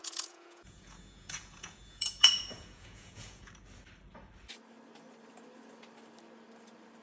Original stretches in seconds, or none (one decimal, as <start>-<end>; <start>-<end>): 3.5-7.0